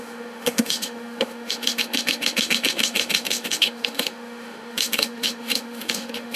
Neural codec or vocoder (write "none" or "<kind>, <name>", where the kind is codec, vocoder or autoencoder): autoencoder, DAC-VAE